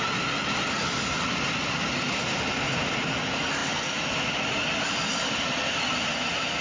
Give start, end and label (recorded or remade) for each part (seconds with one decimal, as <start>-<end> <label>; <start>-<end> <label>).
0.0-6.6 recorded